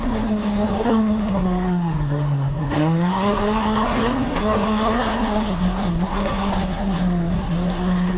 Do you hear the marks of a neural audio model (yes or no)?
yes